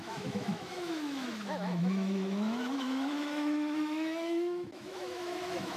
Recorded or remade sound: remade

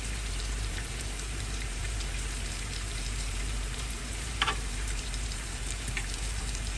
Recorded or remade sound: remade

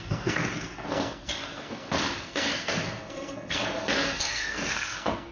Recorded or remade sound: remade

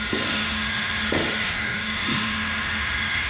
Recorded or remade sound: remade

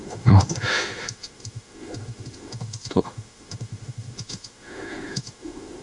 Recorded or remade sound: remade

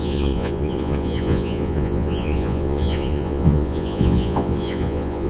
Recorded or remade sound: remade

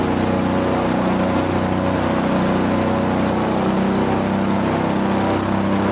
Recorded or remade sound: recorded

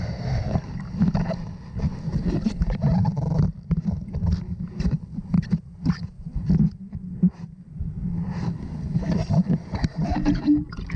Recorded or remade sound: recorded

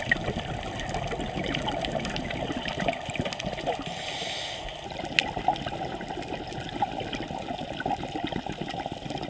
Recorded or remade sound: recorded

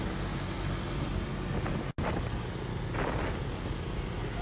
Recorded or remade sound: recorded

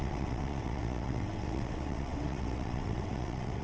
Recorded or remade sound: remade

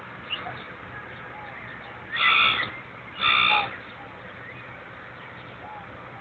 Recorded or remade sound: recorded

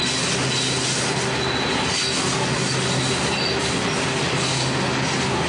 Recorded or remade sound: recorded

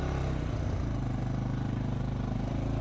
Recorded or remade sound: remade